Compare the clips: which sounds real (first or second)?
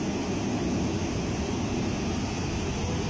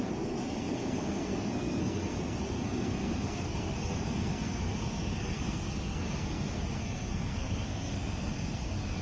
first